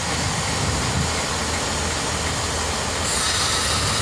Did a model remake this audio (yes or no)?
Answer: no